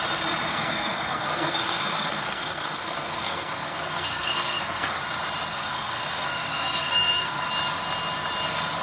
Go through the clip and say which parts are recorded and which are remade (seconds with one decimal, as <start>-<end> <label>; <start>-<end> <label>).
0.0-0.5 recorded; 0.5-5.0 remade; 5.0-5.5 recorded; 5.5-7.5 remade; 7.5-8.8 recorded